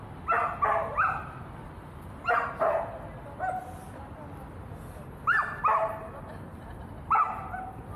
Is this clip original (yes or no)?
yes